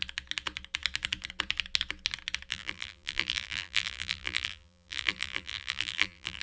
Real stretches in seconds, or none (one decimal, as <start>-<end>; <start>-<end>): 0.0-2.5